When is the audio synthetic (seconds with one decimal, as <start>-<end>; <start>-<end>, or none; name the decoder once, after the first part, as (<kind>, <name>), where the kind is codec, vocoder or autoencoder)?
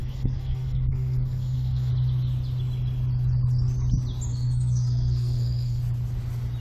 0.0-1.9 (codec, SNAC); 4.3-5.8